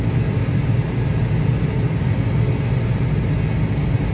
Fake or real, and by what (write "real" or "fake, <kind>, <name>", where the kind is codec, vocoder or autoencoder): real